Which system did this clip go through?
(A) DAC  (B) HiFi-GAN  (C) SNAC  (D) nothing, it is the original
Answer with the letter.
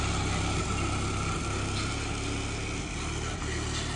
D